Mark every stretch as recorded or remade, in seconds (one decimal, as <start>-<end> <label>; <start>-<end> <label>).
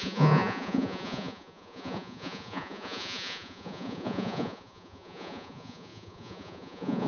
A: 0.0-7.1 remade